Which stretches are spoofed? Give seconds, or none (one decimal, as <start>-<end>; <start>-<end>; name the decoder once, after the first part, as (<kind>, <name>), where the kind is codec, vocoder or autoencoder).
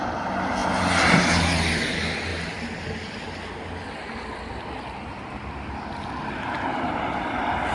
none